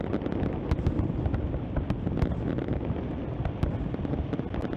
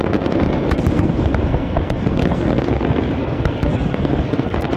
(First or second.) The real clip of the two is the first